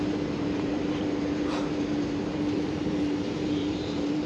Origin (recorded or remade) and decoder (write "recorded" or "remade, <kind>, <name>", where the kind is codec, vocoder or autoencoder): remade, vocoder, BigVGAN v2